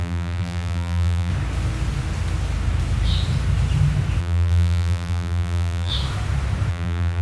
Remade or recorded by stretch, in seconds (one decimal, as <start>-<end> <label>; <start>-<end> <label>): 0.0-1.3 remade; 1.3-4.2 recorded; 4.2-5.9 remade; 5.9-6.7 recorded; 6.7-7.2 remade